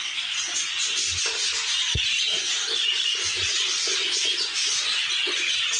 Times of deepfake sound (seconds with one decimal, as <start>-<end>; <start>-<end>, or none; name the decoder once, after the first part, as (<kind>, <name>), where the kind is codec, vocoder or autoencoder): 1.4-3.5 (vocoder, BigVGAN v2)